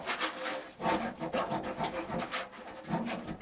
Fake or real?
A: real